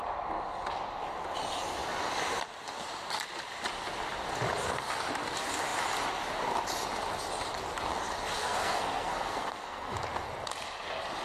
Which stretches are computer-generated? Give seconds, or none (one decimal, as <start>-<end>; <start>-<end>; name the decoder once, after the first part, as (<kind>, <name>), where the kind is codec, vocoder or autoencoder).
8.4-10.0 (codec, SNAC)